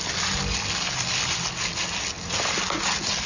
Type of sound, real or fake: real